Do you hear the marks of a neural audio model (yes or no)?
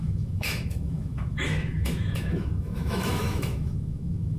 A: yes